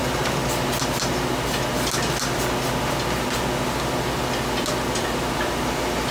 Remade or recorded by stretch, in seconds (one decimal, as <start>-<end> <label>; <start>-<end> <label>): 0.0-6.1 recorded